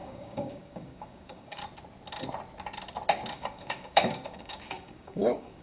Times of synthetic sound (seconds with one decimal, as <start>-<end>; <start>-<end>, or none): 0.0-1.6; 3.3-5.6